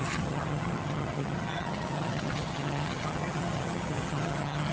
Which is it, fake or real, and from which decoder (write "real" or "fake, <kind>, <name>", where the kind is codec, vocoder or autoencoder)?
fake, vocoder, HiFi-GAN